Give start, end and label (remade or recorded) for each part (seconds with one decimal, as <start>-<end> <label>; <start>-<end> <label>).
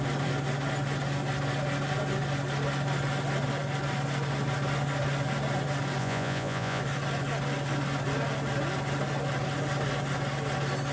0.0-6.0 recorded; 6.0-6.8 remade; 6.8-10.9 recorded